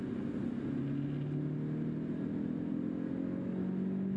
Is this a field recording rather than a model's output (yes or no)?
yes